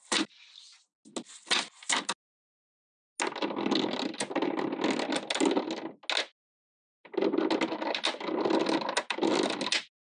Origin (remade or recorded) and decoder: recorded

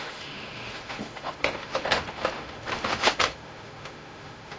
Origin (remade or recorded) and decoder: remade, autoencoder, DAC-VAE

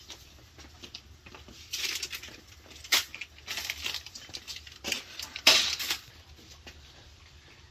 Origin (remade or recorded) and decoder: recorded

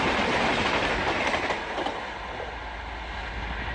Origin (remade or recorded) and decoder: recorded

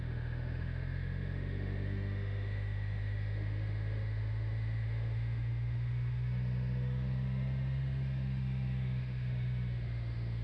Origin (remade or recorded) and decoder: remade, autoencoder, DAC-VAE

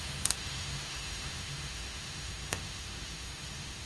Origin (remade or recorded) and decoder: remade, autoencoder, DAC-VAE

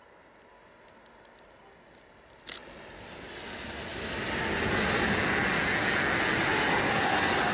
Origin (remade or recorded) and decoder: recorded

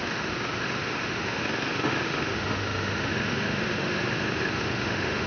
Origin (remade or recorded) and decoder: remade, autoencoder, DAC-VAE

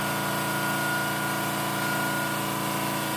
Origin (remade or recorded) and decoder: recorded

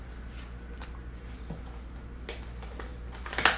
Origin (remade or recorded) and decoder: recorded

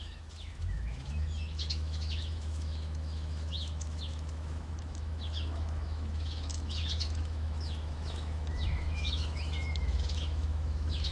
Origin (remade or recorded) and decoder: remade, autoencoder, DAC-VAE